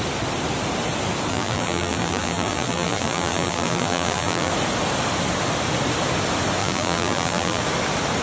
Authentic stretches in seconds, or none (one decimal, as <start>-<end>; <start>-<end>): 0.0-1.3; 4.5-6.6; 7.6-8.2